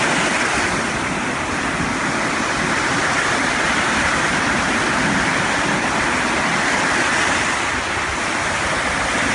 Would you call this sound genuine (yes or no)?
yes